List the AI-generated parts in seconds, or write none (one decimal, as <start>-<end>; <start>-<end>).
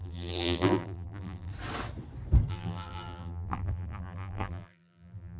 0.0-1.5; 2.5-5.4